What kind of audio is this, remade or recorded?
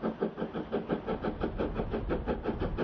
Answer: recorded